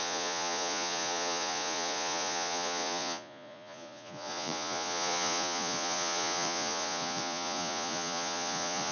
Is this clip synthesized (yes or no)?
yes